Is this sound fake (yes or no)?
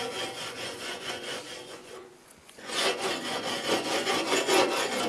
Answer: yes